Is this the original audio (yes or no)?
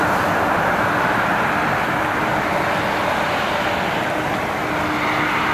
yes